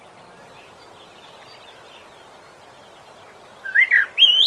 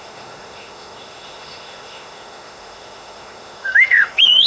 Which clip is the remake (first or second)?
second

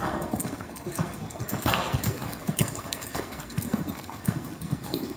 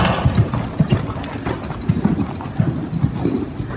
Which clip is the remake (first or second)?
first